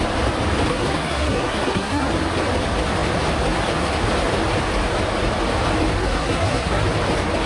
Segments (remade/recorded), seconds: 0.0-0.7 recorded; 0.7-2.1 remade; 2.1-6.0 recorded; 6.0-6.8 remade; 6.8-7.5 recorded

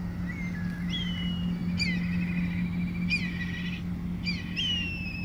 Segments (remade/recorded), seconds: 0.0-5.2 recorded

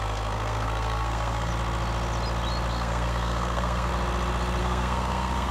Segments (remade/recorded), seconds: 0.0-1.5 remade; 1.5-2.7 recorded; 2.7-3.9 remade; 3.9-4.6 recorded; 4.6-5.5 remade

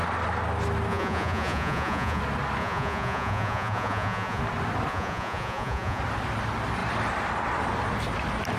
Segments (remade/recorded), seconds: 0.0-0.9 recorded; 0.9-2.2 remade; 2.2-2.6 recorded; 2.6-4.4 remade; 4.4-4.9 recorded; 4.9-6.0 remade; 6.0-8.6 recorded

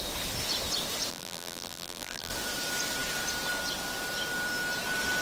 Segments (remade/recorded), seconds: 0.0-1.1 recorded; 1.1-2.3 remade; 2.3-5.2 recorded

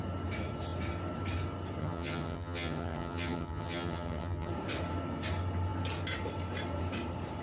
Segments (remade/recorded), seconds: 0.0-1.8 recorded; 1.8-4.5 remade; 4.5-7.4 recorded